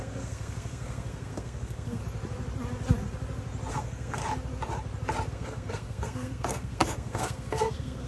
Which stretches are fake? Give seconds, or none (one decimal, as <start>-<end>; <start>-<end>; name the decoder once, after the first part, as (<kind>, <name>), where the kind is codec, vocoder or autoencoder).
0.0-2.0 (codec, SNAC); 3.7-4.2; 5.3-8.1